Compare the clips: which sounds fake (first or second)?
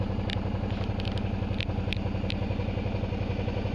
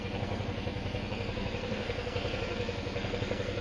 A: second